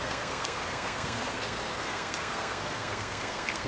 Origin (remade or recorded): remade